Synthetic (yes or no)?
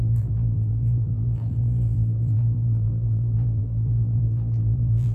yes